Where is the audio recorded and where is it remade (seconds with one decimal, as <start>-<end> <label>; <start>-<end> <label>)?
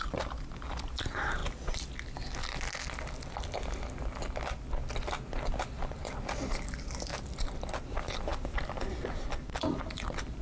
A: 0.0-1.4 remade; 1.4-5.7 recorded; 5.7-7.1 remade; 7.1-7.8 recorded; 7.8-10.4 remade